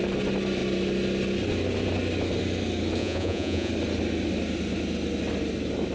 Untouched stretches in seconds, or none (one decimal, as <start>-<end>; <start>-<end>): 0.0-3.0; 3.7-5.9